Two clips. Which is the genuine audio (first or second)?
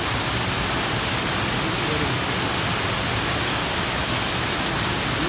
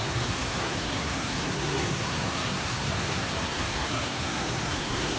first